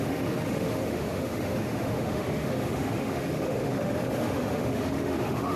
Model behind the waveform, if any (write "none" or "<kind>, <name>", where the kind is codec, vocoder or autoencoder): autoencoder, DAC-VAE